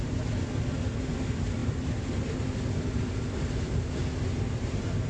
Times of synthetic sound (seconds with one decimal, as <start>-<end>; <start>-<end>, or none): none